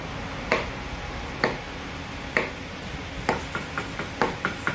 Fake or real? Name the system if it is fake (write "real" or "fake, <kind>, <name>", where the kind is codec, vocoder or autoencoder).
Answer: real